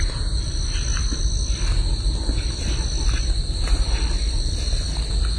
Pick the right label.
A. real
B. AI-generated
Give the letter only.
A